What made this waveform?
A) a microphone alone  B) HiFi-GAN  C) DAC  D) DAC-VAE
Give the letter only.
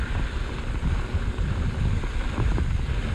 A